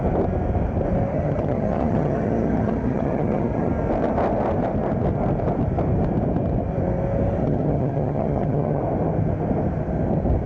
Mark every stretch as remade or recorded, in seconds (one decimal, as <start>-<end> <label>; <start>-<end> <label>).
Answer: 0.0-1.1 recorded; 1.1-3.7 remade; 3.7-7.4 recorded; 7.4-8.8 remade; 8.8-10.5 recorded

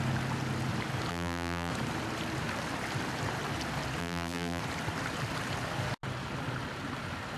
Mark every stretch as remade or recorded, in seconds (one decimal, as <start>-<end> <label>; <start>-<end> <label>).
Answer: 0.0-1.1 recorded; 1.1-1.7 remade; 1.7-4.0 recorded; 4.0-4.6 remade; 4.6-7.4 recorded

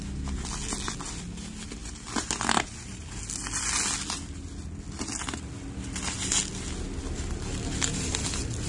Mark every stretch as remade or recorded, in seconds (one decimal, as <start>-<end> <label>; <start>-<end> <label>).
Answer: 0.0-8.7 recorded

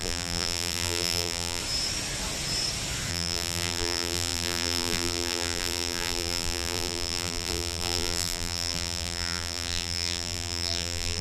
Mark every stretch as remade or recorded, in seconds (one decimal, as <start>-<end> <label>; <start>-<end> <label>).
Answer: 0.0-1.6 remade; 1.6-3.1 recorded; 3.1-11.2 remade

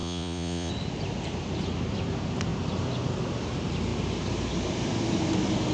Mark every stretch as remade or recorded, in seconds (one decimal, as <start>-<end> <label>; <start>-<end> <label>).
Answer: 0.0-0.7 remade; 0.7-5.7 recorded

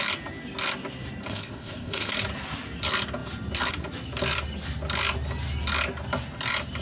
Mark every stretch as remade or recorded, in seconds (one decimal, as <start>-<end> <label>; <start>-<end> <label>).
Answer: 0.0-1.3 recorded; 1.3-2.1 remade; 2.1-6.8 recorded

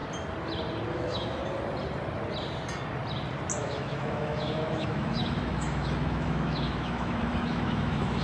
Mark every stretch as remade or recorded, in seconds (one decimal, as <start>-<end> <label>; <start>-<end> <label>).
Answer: 0.0-0.9 recorded; 0.9-1.4 remade; 1.4-3.6 recorded; 3.6-8.2 remade